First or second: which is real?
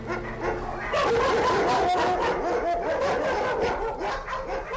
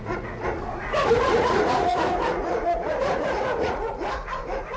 first